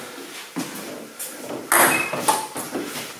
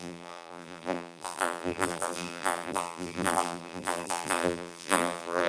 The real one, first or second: first